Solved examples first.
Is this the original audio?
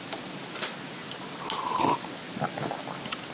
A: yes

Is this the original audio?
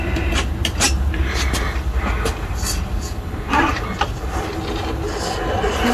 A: yes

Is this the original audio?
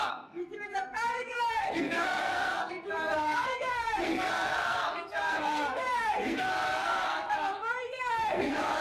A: no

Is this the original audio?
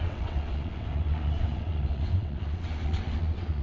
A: no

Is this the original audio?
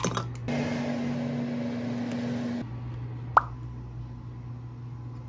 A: yes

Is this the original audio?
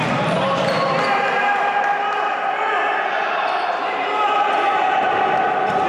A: yes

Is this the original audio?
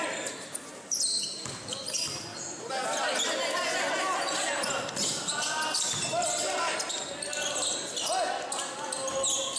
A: yes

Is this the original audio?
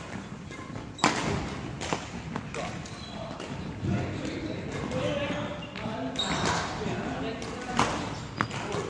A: yes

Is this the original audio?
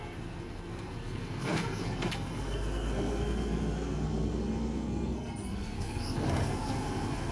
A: no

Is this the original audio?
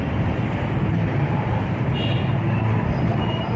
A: yes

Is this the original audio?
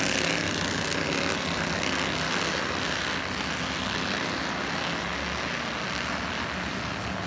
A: yes